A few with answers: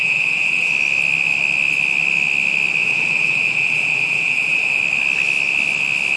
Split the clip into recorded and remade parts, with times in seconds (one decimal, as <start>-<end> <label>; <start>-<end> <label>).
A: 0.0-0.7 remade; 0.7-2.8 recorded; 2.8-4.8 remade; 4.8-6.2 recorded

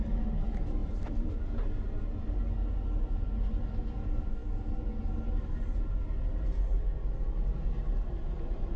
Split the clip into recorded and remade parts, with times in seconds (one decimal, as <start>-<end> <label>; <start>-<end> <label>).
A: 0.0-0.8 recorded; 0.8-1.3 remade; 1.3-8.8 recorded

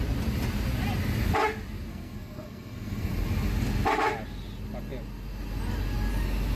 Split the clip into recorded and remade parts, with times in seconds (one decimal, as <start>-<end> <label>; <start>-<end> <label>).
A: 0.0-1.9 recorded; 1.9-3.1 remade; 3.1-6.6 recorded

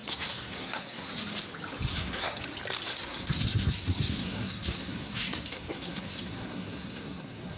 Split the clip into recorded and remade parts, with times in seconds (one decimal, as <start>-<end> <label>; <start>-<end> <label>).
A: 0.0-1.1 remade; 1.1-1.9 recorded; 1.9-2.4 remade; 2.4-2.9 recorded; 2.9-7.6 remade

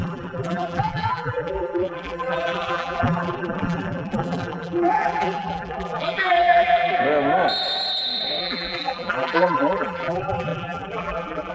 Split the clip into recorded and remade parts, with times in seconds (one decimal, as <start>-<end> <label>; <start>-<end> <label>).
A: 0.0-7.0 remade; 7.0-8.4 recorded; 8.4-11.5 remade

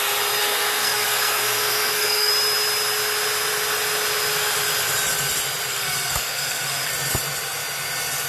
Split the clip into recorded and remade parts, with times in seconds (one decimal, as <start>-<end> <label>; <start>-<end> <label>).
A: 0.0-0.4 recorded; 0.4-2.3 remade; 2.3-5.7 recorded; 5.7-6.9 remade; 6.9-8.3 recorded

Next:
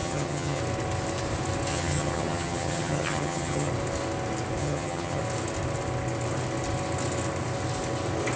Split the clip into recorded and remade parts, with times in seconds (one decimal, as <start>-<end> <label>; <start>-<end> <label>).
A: 0.0-0.6 remade; 0.6-1.7 recorded; 1.7-3.7 remade; 3.7-4.6 recorded; 4.6-5.2 remade; 5.2-8.4 recorded